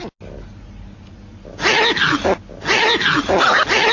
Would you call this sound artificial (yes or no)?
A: no